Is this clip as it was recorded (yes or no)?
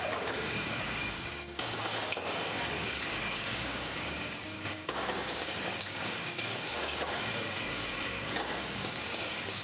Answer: no